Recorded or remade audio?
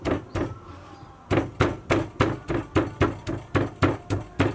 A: recorded